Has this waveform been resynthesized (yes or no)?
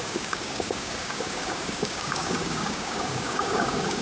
yes